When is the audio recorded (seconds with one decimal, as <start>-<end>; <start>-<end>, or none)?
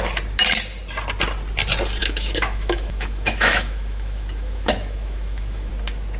0.0-2.0; 5.7-6.2